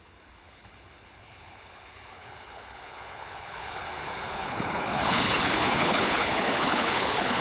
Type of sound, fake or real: fake